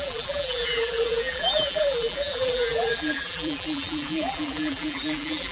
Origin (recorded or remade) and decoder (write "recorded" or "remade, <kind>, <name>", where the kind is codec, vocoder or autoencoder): remade, vocoder, BigVGAN v2